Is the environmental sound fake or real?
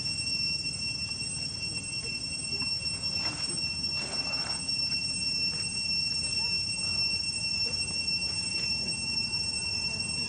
real